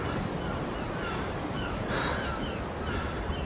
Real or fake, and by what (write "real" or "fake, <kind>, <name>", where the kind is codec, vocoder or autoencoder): real